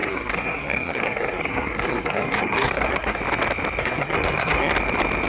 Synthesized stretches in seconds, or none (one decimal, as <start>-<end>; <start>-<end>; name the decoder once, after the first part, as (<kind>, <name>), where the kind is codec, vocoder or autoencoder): 0.0-3.2 (codec, SNAC); 3.8-4.7